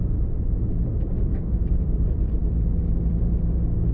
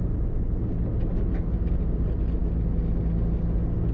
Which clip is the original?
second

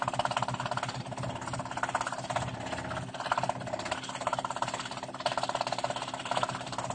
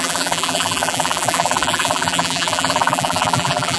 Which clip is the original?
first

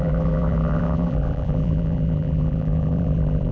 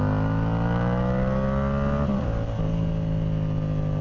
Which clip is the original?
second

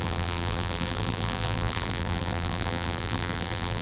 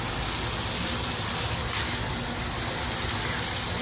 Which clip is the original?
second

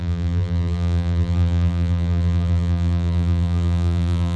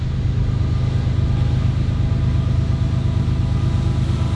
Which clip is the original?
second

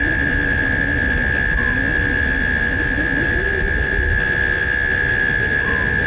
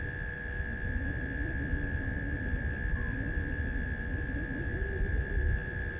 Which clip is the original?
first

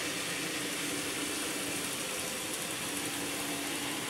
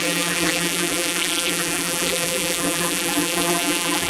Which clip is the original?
first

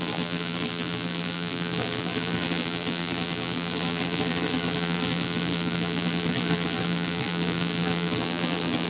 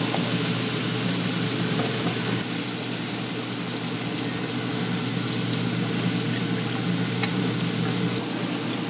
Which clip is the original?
second